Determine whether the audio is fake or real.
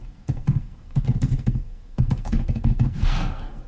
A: fake